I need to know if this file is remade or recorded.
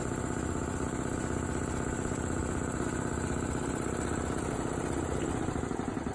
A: recorded